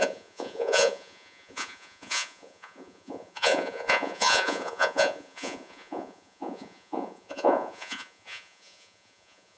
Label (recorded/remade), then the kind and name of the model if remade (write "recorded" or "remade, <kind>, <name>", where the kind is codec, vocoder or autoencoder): remade, vocoder, Vocos